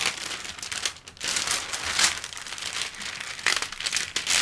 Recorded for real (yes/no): yes